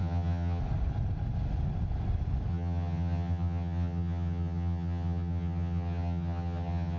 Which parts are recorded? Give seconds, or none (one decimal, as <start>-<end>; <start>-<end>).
0.6-2.5